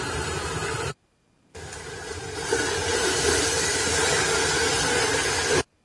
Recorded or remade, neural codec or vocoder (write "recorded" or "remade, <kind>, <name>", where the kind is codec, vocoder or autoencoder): recorded